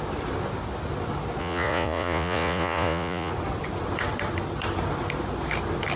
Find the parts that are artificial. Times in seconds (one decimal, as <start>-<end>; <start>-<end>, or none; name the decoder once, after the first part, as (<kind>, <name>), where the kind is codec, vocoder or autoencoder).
1.4-3.3 (vocoder, Vocos)